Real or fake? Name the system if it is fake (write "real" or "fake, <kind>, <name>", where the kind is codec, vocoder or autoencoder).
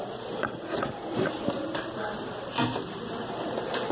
fake, vocoder, BigVGAN v2